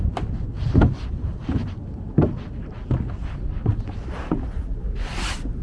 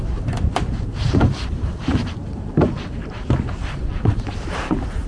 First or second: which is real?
first